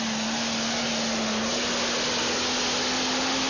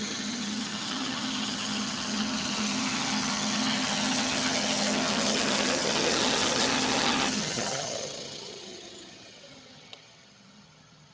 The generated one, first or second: second